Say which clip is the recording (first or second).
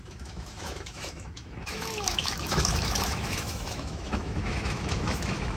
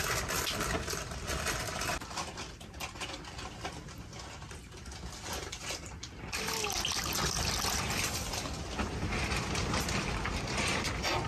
second